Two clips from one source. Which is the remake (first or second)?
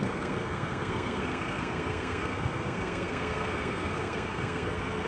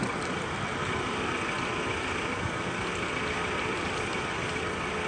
first